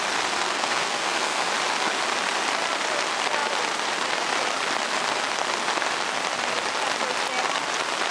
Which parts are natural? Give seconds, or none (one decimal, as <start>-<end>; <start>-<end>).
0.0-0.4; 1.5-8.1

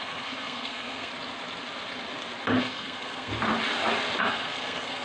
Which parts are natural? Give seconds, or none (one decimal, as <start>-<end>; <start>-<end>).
1.1-2.6; 3.3-4.2

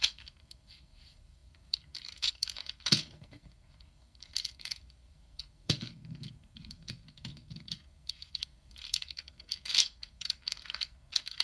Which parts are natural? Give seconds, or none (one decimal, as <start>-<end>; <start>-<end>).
none

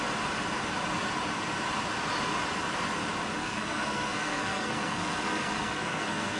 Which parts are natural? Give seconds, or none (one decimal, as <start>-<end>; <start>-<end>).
0.0-3.4

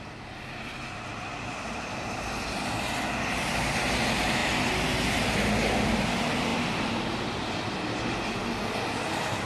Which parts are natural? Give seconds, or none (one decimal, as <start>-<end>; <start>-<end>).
0.0-9.5

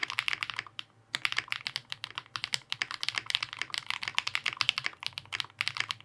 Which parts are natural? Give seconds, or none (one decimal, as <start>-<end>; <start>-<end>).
0.0-6.0

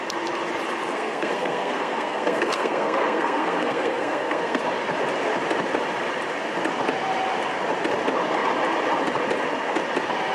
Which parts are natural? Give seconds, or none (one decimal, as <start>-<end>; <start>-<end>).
0.0-0.9; 4.6-10.3

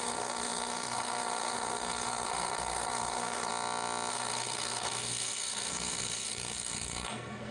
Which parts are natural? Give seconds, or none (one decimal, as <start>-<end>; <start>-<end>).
3.5-4.1